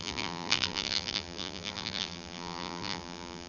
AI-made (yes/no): yes